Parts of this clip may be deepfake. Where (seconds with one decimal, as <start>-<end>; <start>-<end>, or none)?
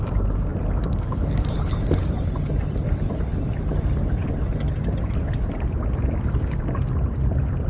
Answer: none